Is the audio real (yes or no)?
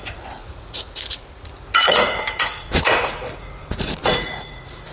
no